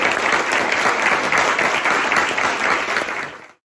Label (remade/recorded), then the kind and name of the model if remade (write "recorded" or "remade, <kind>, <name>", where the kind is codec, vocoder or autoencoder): recorded